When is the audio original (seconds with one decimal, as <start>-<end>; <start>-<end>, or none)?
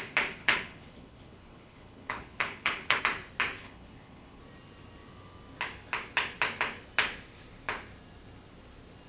0.0-0.4; 3.0-3.6; 4.4-9.1